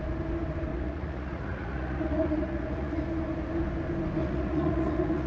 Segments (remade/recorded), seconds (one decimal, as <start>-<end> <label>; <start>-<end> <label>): 0.0-0.7 recorded; 0.7-3.0 remade; 3.0-4.2 recorded; 4.2-5.3 remade